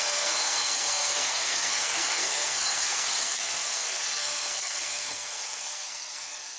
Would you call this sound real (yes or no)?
no